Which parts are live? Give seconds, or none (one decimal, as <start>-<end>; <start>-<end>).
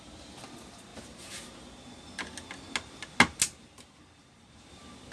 0.0-5.1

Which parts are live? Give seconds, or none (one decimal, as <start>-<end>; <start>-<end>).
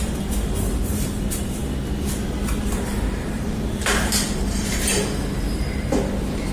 1.6-2.6